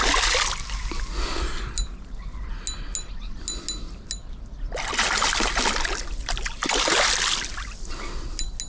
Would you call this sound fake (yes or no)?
no